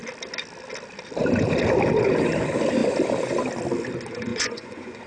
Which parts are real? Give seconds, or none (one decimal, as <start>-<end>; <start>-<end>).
0.0-4.3